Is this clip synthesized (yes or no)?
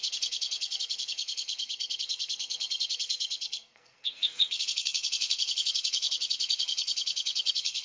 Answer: yes